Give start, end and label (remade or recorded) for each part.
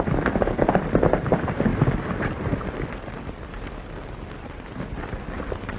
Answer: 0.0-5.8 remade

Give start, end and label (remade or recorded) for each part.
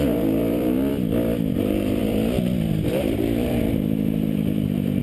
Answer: 0.0-0.9 remade; 0.9-1.5 recorded; 1.5-5.0 remade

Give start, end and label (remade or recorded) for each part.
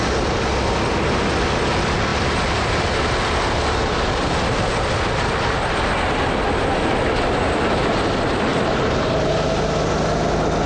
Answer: 0.0-8.5 recorded; 8.5-9.3 remade; 9.3-10.7 recorded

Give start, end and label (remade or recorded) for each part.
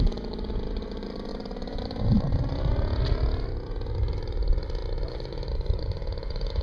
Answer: 0.0-1.3 recorded; 1.3-2.7 remade; 2.7-4.8 recorded; 4.8-6.6 remade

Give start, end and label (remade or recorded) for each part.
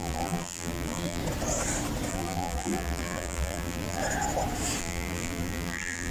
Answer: 0.0-1.2 remade; 1.2-2.1 recorded; 2.1-4.0 remade; 4.0-4.8 recorded; 4.8-6.1 remade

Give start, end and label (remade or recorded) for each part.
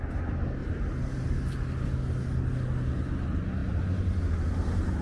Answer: 0.0-0.6 recorded; 0.6-1.3 remade; 1.3-5.0 recorded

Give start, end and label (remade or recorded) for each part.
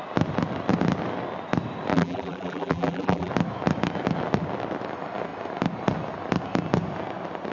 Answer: 0.0-1.9 recorded; 1.9-3.3 remade; 3.3-7.5 recorded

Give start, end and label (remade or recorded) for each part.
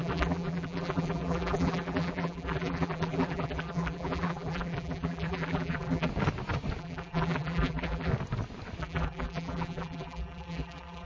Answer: 0.0-6.1 remade; 6.1-6.8 recorded; 6.8-8.1 remade; 8.1-8.8 recorded; 8.8-11.1 remade